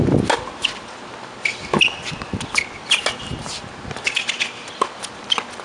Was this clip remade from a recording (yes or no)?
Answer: no